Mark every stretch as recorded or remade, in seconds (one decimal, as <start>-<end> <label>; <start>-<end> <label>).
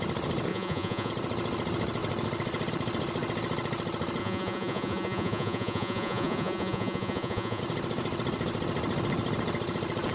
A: 0.0-0.5 recorded; 0.5-1.1 remade; 1.1-4.2 recorded; 4.2-7.6 remade; 7.6-10.1 recorded